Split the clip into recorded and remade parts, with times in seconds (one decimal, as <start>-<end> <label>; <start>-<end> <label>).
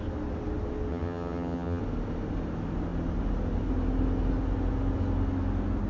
0.0-0.9 recorded; 0.9-1.8 remade; 1.8-5.9 recorded